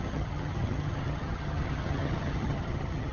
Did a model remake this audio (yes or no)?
yes